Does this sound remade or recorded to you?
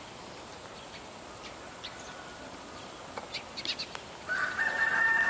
recorded